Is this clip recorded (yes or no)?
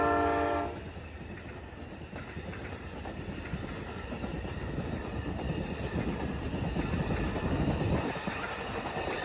yes